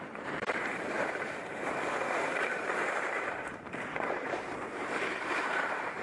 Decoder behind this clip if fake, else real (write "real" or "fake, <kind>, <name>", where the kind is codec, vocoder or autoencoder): fake, vocoder, BigVGAN v2